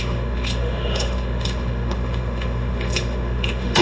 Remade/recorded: remade